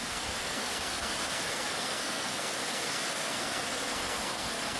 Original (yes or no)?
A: no